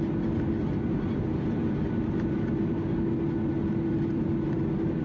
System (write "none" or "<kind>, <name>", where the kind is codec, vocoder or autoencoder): none